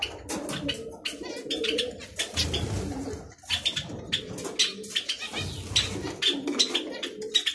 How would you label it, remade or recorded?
recorded